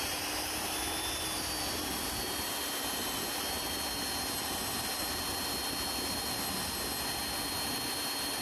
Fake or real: real